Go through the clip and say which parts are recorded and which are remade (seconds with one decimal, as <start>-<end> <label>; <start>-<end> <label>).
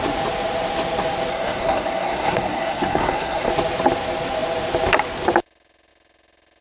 0.0-1.3 recorded; 1.3-3.5 remade; 3.5-6.6 recorded